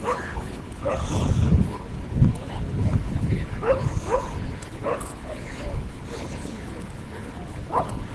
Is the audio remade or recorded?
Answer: remade